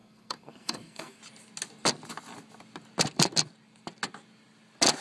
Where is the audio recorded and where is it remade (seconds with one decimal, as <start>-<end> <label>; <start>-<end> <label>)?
0.0-1.2 remade; 1.2-5.0 recorded